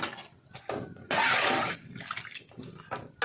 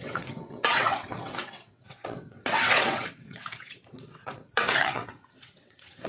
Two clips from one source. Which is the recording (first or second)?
first